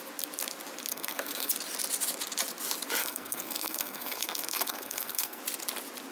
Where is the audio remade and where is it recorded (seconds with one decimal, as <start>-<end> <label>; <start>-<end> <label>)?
0.0-0.9 recorded; 0.9-1.5 remade; 1.5-3.0 recorded; 3.0-5.4 remade; 5.4-6.1 recorded